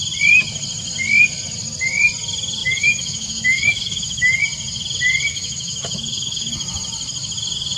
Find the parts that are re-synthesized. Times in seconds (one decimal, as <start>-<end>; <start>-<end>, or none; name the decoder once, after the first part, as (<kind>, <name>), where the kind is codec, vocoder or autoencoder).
2.6-4.4 (autoencoder, DAC-VAE); 5.3-6.5